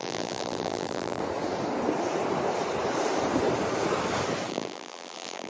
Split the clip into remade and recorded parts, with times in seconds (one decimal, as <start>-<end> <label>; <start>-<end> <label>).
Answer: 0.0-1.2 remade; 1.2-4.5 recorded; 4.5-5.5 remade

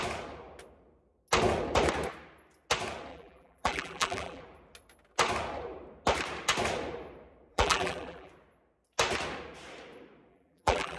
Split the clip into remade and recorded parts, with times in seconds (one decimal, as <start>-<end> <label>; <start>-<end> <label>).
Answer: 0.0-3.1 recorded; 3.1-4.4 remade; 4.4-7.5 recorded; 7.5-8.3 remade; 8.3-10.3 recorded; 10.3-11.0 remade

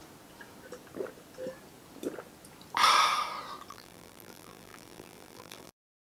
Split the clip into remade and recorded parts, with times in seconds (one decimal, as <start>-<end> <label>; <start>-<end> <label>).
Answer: 0.0-3.7 recorded; 3.7-6.2 remade